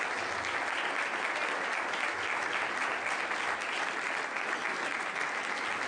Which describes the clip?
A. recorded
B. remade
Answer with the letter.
A